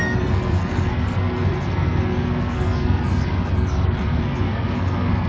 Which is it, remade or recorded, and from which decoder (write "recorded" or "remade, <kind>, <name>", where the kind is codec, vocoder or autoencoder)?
remade, codec, SNAC